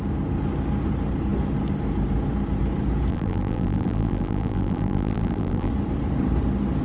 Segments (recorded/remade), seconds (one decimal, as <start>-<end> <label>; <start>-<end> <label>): 0.0-3.1 recorded; 3.1-5.7 remade; 5.7-6.8 recorded